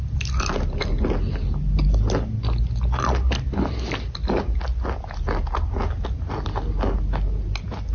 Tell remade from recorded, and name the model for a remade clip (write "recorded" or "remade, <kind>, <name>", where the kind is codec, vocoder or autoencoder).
recorded